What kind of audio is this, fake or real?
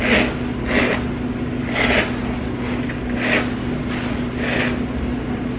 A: real